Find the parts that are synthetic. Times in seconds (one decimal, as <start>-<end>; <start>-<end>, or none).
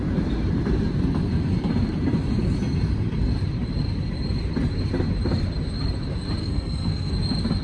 6.4-7.1